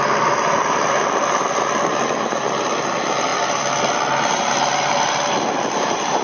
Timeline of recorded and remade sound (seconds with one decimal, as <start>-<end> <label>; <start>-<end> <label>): 0.0-6.2 recorded

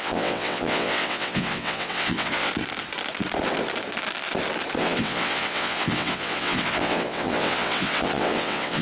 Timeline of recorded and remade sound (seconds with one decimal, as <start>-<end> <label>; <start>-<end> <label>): 0.0-2.5 remade; 2.5-4.8 recorded; 4.8-8.8 remade